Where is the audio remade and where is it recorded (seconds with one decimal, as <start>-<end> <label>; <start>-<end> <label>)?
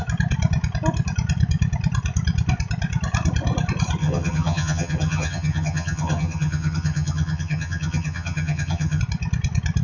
0.0-4.0 recorded; 4.0-9.0 remade; 9.0-9.8 recorded